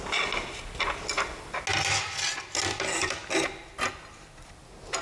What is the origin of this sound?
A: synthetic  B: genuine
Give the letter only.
B